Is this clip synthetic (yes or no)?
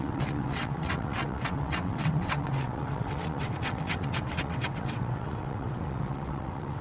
yes